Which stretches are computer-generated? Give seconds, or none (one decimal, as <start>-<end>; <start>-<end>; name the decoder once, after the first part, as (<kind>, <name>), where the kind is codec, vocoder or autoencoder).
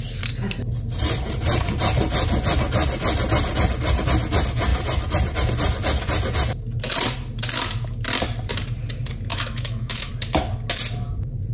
9.3-10.1 (autoencoder, DAC-VAE)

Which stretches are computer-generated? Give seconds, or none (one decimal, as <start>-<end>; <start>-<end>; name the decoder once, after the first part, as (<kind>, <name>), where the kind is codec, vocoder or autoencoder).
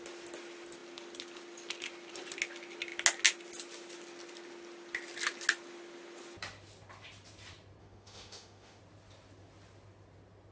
7.8-8.8 (autoencoder, DAC-VAE)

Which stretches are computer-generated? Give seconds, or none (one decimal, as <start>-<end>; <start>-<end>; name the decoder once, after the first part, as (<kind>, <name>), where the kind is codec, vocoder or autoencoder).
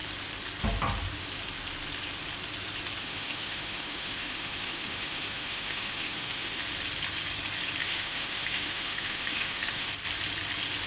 3.0-6.6 (autoencoder, DAC-VAE); 7.8-9.9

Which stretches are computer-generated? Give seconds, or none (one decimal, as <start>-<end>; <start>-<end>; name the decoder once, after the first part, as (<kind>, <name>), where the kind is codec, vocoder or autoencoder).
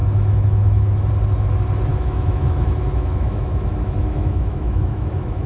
0.0-1.1 (autoencoder, DAC-VAE); 1.9-5.5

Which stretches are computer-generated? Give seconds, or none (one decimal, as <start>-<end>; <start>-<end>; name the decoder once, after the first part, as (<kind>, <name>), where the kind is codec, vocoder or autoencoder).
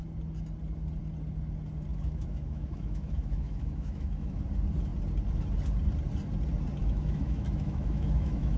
1.9-4.4 (autoencoder, DAC-VAE); 6.8-8.6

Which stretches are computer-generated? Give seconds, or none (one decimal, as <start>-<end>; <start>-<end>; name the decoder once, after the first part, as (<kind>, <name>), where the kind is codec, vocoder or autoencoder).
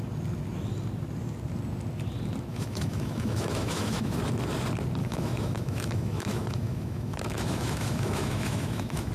2.5-4.2 (autoencoder, DAC-VAE); 5.0-9.1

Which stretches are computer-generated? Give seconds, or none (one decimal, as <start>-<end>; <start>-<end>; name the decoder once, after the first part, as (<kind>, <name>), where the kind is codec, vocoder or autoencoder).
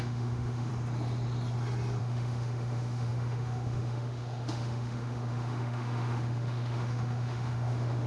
0.0-0.7 (autoencoder, DAC-VAE); 2.0-8.1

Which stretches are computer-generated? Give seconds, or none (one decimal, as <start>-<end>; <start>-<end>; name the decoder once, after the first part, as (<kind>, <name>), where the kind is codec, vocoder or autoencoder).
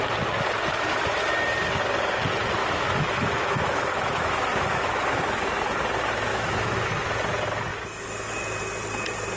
2.6-5.2 (autoencoder, DAC-VAE); 6.3-6.9; 7.7-8.3